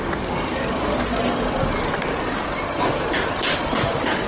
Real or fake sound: real